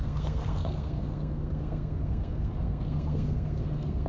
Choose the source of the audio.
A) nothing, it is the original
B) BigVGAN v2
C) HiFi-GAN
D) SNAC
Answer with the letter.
D